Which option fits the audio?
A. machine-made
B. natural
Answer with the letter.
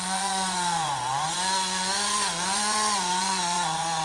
A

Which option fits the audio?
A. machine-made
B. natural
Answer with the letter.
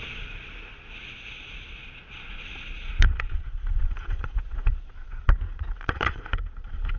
A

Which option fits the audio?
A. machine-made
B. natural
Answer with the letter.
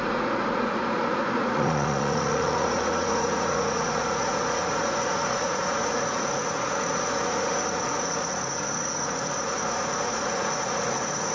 A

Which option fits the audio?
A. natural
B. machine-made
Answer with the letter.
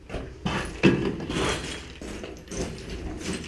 A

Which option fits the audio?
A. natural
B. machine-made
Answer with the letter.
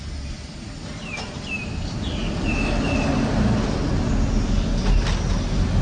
A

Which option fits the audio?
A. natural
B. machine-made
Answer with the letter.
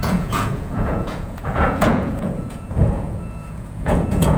B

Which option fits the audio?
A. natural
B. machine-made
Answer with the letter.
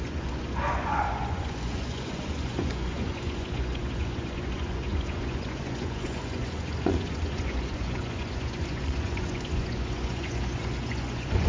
B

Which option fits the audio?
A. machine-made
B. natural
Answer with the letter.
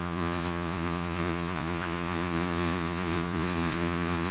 A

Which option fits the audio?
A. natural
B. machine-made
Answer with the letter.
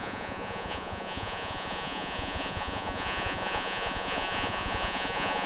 B